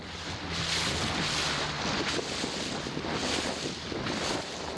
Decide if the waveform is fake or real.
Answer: real